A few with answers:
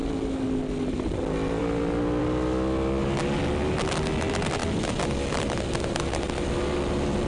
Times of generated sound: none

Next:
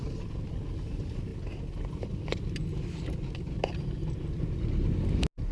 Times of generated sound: none